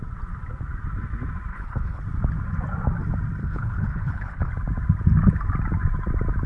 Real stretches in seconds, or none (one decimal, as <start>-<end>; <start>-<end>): 0.0-1.5; 2.0-3.4; 4.5-6.5